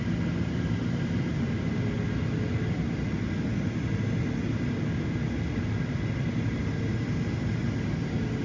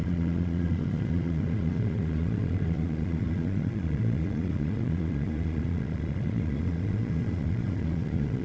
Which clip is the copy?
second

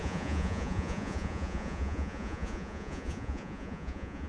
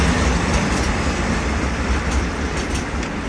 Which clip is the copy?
first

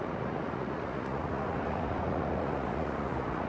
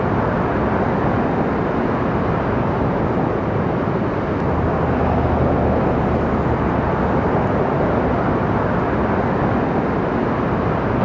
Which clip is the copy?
first